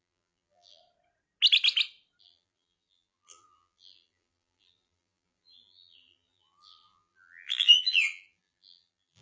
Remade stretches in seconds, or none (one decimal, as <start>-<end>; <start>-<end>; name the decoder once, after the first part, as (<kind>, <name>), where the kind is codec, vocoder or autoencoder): 0.0-0.8 (vocoder, BigVGAN v2); 2.2-9.2